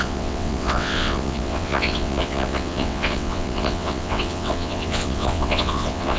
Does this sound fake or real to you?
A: fake